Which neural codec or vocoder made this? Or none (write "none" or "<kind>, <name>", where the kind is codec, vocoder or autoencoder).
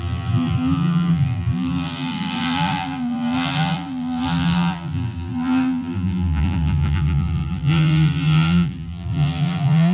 vocoder, BigVGAN v2